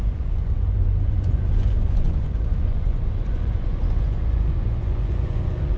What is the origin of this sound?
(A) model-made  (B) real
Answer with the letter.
A